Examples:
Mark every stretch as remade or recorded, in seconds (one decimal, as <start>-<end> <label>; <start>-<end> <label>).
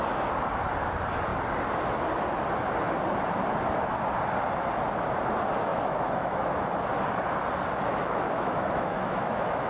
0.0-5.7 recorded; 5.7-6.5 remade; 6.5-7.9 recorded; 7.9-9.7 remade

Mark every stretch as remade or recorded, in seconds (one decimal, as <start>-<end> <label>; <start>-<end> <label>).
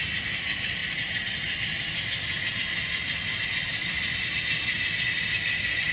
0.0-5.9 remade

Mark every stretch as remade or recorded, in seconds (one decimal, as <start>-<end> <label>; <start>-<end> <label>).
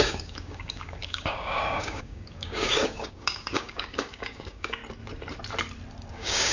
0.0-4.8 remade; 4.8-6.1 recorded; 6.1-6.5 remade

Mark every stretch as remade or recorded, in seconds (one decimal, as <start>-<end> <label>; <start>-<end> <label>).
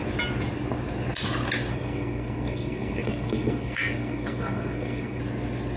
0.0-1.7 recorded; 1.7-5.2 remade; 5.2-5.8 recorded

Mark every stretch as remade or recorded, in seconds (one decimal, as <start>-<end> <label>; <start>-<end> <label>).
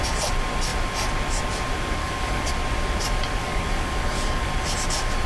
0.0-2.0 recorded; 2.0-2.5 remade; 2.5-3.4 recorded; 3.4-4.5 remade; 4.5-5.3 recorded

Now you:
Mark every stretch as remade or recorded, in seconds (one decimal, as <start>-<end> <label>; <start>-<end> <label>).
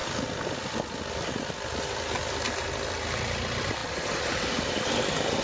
0.0-5.4 recorded